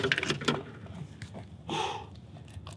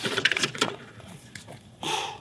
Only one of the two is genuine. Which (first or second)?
first